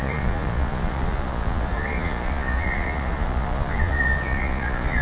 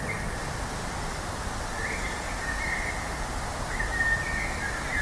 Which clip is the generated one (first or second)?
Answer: first